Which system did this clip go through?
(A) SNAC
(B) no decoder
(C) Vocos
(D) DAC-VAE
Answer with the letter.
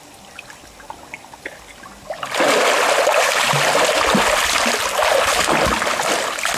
B